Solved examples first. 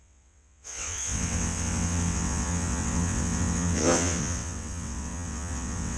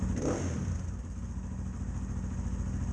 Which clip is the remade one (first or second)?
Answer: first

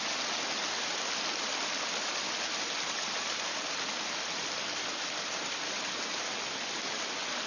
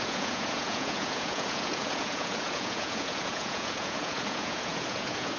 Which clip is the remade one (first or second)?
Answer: second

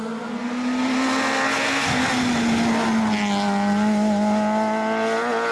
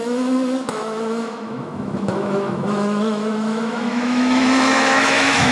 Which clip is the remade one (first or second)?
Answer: second